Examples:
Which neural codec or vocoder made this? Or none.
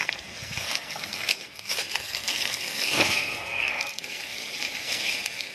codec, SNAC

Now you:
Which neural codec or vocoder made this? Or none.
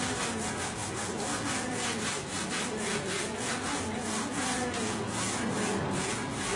none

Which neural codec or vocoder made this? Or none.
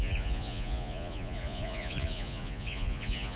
vocoder, Vocos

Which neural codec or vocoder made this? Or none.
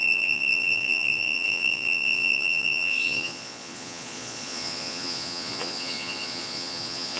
vocoder, Vocos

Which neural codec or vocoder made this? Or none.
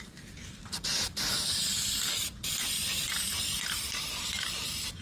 none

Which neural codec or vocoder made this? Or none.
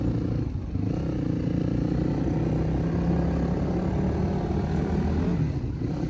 none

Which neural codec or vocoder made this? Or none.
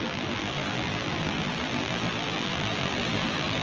vocoder, BigVGAN v2